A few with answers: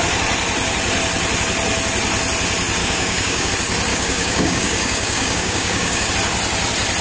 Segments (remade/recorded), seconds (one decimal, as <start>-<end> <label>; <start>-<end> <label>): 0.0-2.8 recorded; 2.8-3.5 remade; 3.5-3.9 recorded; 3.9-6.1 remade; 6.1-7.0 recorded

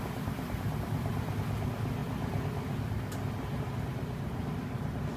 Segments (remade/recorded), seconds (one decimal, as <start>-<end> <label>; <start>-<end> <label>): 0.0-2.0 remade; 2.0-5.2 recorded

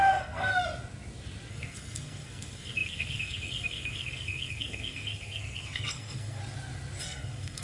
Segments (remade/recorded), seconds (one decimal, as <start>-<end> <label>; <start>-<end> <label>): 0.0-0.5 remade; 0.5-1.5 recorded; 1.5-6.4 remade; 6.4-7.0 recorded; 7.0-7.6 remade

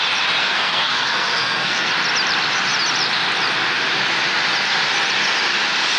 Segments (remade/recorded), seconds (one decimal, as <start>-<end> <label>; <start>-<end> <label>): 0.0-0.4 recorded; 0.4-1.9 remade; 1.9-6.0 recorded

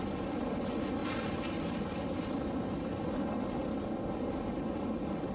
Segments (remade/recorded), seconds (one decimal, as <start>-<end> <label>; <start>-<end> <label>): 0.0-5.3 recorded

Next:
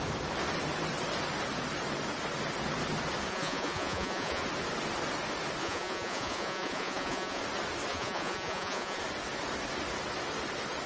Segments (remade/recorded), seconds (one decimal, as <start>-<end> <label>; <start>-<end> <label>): 0.0-3.3 recorded; 3.3-4.4 remade; 4.4-5.6 recorded; 5.6-7.4 remade; 7.4-7.9 recorded; 7.9-9.0 remade; 9.0-10.9 recorded

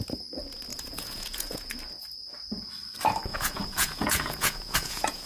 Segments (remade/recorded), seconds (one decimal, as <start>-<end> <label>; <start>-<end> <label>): 0.0-0.7 recorded; 0.7-1.7 remade; 1.7-3.3 recorded; 3.3-5.3 remade

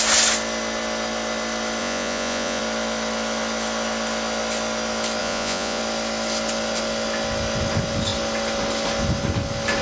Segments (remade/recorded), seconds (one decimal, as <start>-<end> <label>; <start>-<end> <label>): 0.0-1.8 recorded; 1.8-2.6 remade; 2.6-5.2 recorded; 5.2-5.8 remade; 5.8-9.8 recorded